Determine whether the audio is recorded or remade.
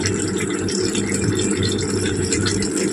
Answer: remade